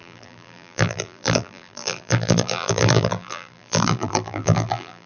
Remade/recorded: remade